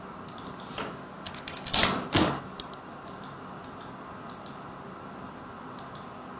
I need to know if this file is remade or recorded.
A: recorded